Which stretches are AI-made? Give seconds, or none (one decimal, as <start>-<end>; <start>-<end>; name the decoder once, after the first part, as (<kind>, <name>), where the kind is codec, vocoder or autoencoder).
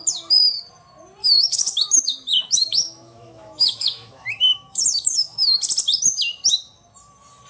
1.2-5.6 (autoencoder, DAC-VAE)